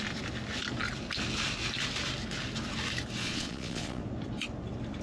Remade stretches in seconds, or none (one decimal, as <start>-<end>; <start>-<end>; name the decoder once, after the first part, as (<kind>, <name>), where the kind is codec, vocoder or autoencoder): 3.2-4.0 (vocoder, Vocos)